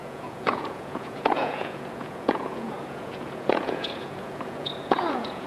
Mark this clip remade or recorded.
remade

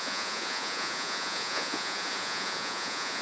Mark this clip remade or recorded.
remade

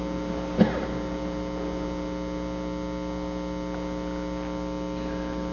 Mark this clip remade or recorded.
recorded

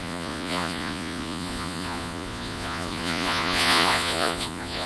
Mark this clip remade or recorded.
remade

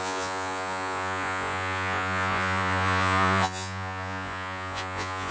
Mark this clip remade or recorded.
remade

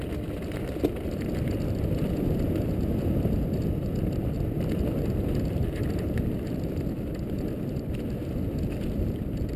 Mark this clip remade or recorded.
recorded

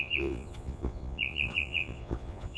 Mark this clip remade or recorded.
remade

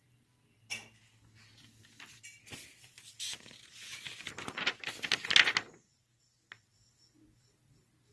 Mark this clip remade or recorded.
recorded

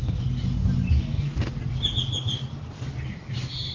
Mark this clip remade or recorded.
recorded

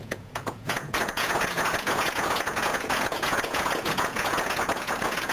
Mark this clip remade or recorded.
remade